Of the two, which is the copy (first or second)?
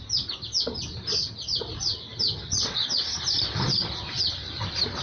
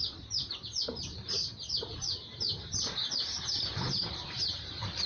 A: second